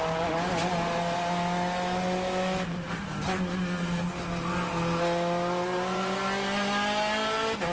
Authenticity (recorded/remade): recorded